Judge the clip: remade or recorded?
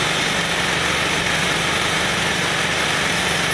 remade